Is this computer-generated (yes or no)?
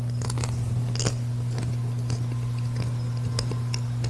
no